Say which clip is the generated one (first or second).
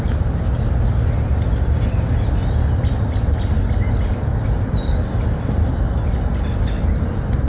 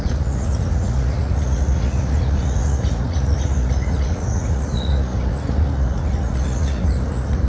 second